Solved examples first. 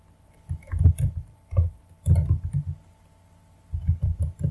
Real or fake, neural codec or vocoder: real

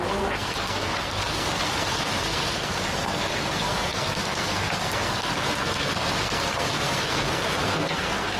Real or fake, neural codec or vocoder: fake, codec, SNAC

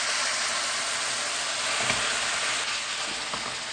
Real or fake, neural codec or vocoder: real